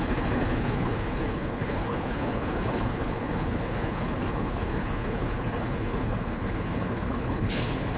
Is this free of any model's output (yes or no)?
no